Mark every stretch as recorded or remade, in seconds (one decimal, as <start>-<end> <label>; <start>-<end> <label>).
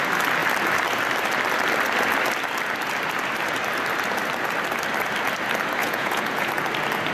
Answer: 0.0-5.8 recorded; 5.8-6.5 remade; 6.5-7.1 recorded